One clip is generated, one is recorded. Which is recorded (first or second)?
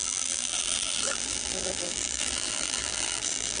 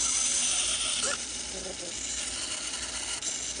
second